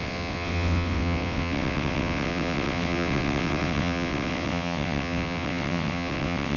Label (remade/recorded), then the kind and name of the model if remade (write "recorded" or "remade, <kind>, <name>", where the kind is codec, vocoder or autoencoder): remade, vocoder, WaveNeXt